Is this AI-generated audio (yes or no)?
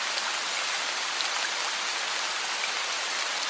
no